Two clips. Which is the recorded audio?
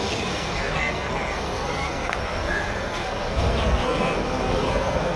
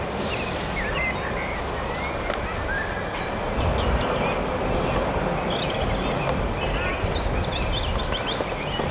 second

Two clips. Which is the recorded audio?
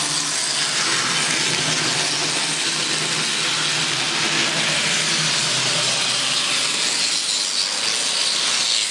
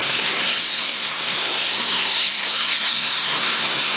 first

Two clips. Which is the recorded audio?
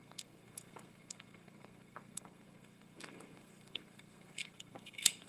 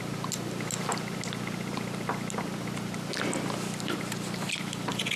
second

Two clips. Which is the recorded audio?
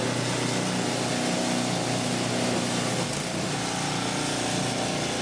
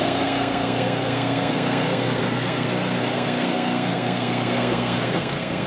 first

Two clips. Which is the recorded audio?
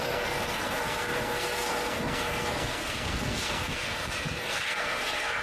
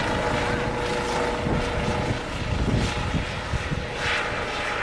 second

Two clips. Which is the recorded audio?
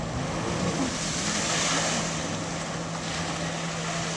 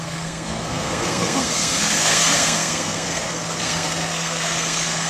first